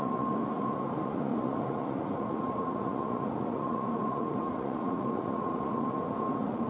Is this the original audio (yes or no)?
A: no